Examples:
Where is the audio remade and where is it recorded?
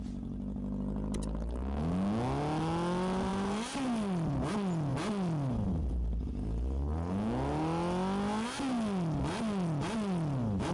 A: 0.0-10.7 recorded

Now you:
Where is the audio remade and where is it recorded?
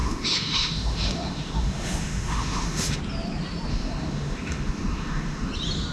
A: 0.0-3.0 remade; 3.0-3.7 recorded; 3.7-5.5 remade; 5.5-5.9 recorded